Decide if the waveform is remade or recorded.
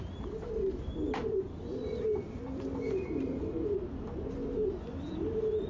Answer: recorded